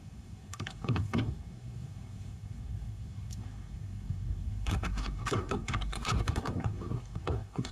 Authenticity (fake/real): fake